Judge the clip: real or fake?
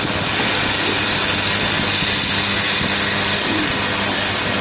real